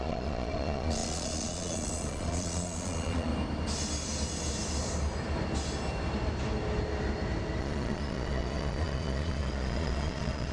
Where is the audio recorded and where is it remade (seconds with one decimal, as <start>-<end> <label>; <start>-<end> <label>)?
0.0-3.3 remade; 3.3-7.6 recorded; 7.6-10.5 remade